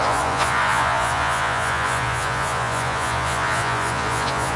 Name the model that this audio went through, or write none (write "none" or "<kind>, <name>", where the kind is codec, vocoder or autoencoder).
vocoder, Vocos